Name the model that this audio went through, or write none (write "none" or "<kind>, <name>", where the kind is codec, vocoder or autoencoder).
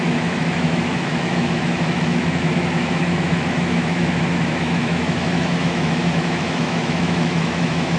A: autoencoder, DAC-VAE